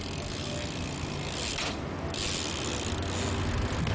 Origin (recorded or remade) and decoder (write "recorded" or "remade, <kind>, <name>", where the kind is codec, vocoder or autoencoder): recorded